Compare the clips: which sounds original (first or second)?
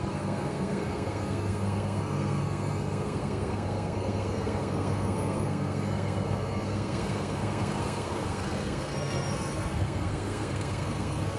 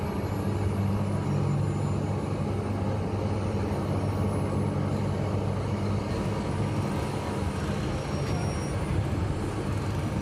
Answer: second